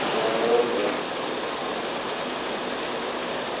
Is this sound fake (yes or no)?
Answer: no